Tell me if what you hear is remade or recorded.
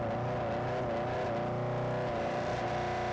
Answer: recorded